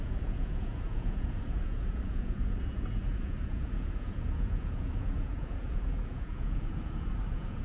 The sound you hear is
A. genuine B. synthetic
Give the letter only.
B